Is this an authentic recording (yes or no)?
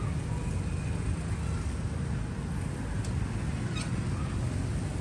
yes